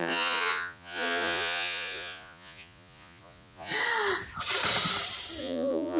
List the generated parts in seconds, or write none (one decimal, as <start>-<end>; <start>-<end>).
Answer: 0.0-3.7; 5.4-6.0